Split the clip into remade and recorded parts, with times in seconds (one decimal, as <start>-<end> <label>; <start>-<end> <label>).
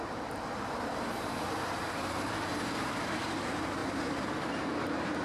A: 0.0-3.8 remade; 3.8-4.5 recorded; 4.5-5.2 remade